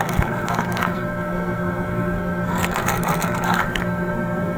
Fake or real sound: fake